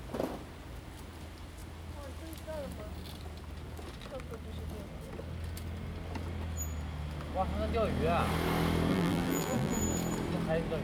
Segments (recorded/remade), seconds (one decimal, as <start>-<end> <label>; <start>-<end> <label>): 0.0-8.9 recorded; 8.9-9.8 remade; 9.8-10.8 recorded